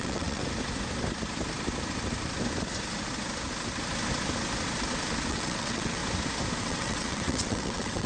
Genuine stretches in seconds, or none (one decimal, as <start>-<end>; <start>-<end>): 0.4-5.3; 6.0-6.6